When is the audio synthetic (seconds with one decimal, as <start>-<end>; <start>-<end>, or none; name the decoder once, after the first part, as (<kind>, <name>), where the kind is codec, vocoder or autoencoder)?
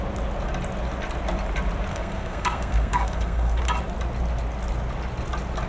1.9-3.6 (codec, SNAC)